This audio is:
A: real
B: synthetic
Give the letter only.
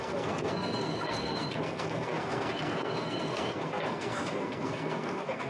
B